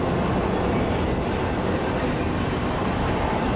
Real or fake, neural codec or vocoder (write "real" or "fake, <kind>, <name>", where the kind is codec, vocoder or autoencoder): real